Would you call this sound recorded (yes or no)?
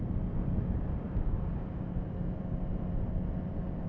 yes